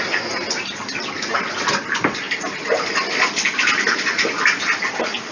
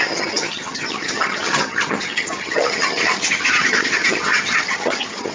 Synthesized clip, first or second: second